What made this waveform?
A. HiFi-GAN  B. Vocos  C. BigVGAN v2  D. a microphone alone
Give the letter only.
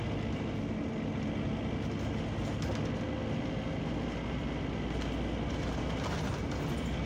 D